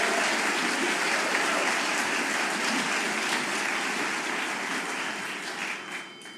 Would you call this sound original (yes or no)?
yes